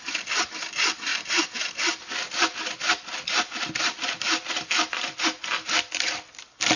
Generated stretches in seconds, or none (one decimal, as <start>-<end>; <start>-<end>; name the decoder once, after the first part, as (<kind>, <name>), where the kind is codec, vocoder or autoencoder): 1.1-5.2 (vocoder, BigVGAN v2)